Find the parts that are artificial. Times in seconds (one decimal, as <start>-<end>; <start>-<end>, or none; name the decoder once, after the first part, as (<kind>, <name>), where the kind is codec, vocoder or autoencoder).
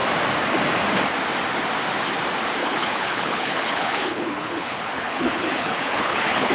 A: 2.6-6.5 (codec, HILCodec)